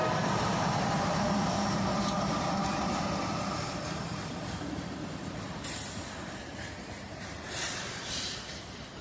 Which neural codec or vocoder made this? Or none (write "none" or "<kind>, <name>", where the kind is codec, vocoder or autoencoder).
vocoder, BigVGAN v2